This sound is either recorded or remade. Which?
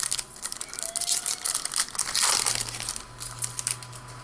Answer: recorded